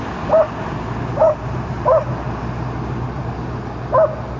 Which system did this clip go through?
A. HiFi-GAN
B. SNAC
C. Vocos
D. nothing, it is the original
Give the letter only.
D